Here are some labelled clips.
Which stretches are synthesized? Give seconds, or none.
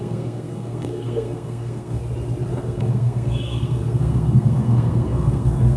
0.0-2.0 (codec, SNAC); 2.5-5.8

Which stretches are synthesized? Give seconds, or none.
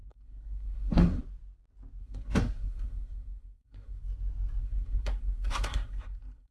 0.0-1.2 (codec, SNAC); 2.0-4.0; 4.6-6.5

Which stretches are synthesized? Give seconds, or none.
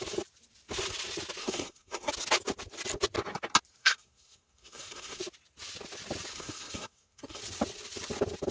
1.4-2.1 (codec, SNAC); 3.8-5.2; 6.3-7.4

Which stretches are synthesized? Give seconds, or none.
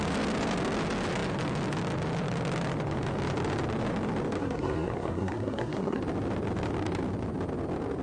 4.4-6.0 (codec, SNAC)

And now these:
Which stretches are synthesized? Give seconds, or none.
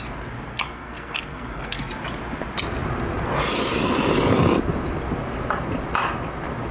0.5-1.9 (codec, SNAC)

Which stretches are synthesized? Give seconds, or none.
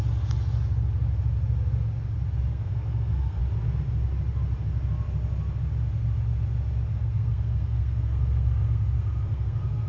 2.5-3.4 (codec, SNAC); 7.0-9.9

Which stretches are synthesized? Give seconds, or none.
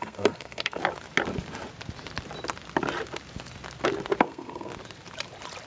0.0-0.8 (codec, SNAC); 4.2-4.7